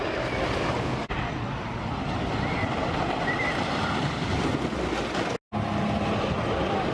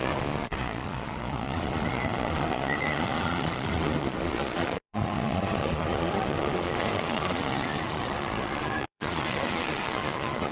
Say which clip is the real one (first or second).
first